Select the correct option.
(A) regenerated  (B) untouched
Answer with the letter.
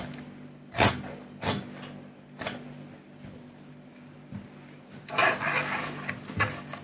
B